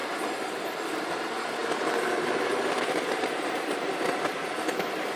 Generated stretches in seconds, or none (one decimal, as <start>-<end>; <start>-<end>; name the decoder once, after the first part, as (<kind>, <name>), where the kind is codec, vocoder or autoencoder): 1.6-3.9 (vocoder, BigVGAN v2)